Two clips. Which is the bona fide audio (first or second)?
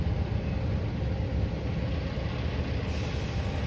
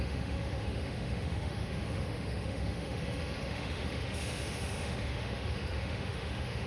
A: first